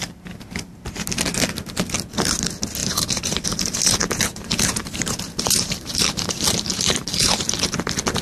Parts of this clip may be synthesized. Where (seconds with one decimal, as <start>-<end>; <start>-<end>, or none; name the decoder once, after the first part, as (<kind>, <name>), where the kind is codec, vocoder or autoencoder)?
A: 2.8-7.5 (vocoder, BigVGAN v2)